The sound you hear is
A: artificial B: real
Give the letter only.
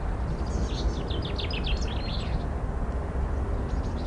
B